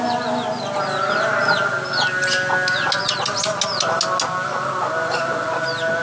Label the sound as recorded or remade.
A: recorded